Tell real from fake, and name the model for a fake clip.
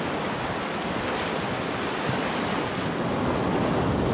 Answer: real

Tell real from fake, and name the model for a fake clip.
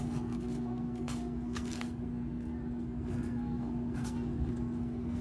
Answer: fake, codec, SNAC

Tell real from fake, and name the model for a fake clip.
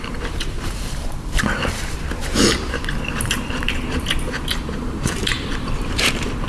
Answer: fake, vocoder, BigVGAN v2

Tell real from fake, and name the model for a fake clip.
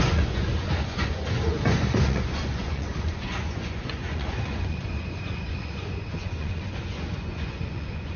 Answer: fake, vocoder, Vocos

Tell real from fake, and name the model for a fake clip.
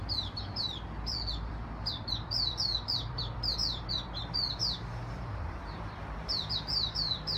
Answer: fake, vocoder, BigVGAN v2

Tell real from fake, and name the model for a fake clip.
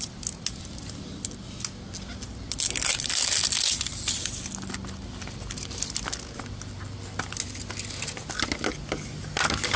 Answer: real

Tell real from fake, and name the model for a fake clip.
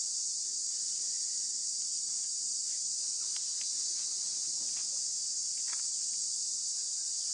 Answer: real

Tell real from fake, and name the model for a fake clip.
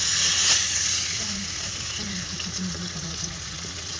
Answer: fake, vocoder, Vocos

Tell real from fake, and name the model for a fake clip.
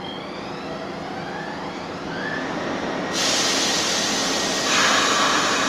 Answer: real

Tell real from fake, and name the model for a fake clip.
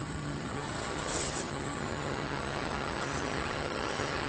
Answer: fake, vocoder, HiFi-GAN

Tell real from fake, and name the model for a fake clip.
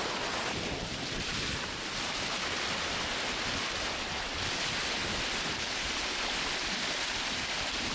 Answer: real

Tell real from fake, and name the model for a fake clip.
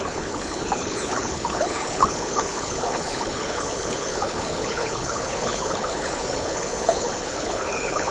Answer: fake, codec, HILCodec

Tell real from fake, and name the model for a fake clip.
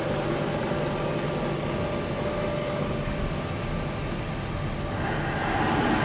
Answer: real